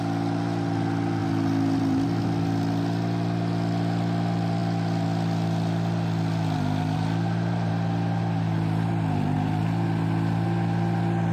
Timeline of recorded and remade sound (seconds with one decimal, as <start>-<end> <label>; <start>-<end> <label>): 0.0-11.3 recorded